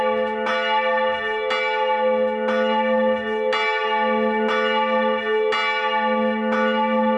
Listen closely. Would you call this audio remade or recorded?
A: recorded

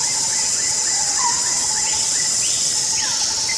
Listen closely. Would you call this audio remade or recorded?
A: remade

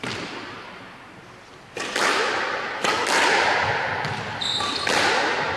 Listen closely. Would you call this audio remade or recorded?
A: recorded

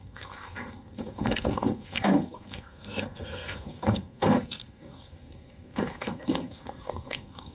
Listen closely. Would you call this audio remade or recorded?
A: remade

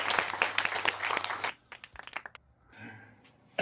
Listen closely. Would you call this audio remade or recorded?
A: recorded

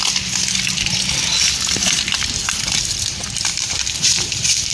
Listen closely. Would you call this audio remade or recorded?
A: remade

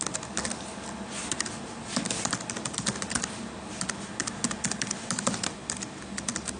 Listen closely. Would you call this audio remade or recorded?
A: recorded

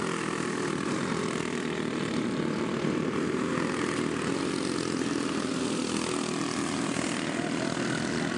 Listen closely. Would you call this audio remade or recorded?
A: recorded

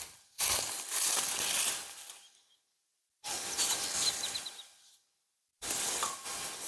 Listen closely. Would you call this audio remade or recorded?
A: recorded